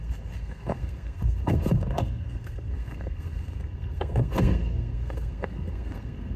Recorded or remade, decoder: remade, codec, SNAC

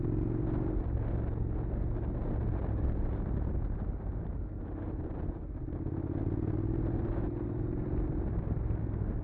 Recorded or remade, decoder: recorded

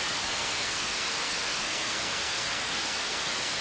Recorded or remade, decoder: remade, codec, SNAC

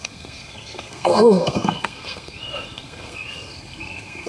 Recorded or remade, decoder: remade, codec, SNAC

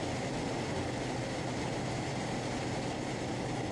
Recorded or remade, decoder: recorded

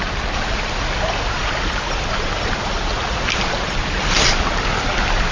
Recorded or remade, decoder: recorded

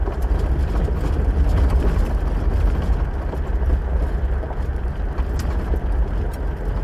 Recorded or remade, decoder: recorded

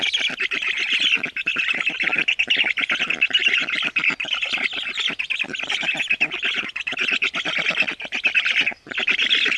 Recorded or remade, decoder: recorded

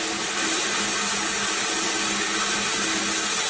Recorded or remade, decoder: recorded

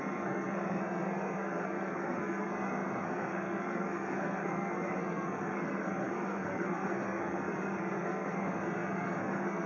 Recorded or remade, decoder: remade, codec, SNAC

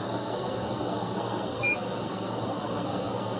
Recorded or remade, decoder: remade, codec, SNAC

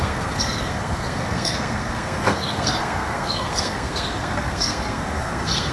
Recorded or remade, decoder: remade, codec, SNAC